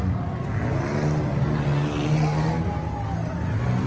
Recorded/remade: recorded